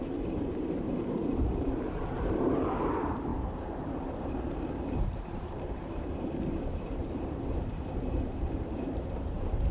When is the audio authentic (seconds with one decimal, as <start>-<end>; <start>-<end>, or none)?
none